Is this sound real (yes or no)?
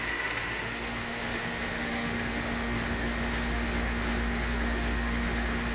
no